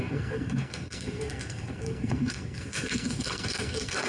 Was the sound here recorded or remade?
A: remade